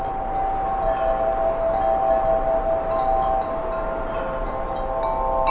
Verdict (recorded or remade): recorded